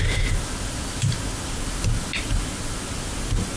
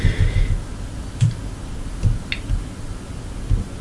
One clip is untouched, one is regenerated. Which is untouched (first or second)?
second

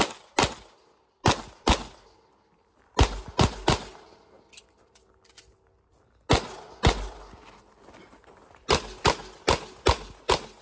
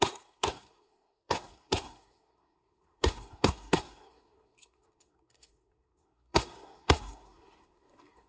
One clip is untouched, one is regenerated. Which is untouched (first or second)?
first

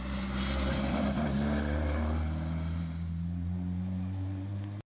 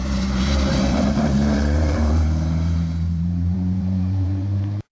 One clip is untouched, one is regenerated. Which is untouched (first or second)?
first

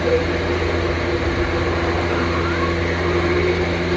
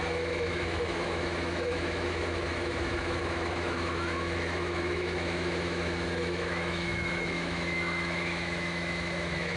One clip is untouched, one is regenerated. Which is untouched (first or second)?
first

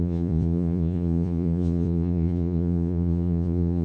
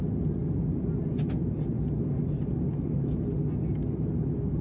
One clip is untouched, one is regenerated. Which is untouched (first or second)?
second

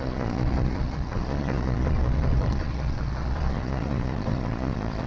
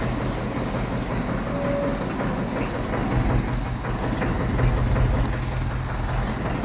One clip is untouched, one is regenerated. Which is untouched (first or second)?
second